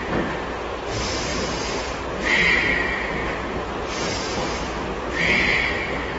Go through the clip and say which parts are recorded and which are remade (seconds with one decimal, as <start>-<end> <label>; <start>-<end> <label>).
0.0-6.2 recorded